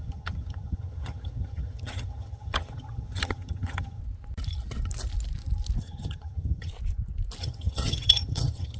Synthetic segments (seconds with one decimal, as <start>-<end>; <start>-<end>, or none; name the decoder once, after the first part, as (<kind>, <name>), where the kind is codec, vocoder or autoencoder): 0.0-4.0 (vocoder, HiFi-GAN); 5.8-6.7; 7.4-8.8